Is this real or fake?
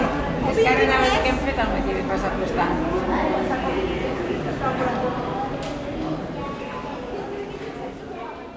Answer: real